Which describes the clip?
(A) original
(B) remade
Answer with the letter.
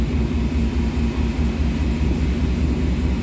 A